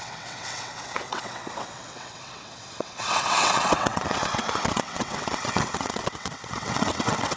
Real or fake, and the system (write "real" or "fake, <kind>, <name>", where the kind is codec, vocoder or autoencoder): fake, vocoder, WaveNeXt